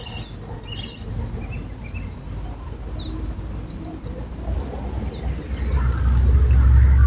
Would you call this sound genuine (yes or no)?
yes